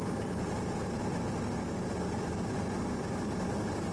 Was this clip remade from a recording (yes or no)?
no